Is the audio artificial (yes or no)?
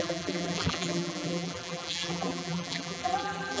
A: yes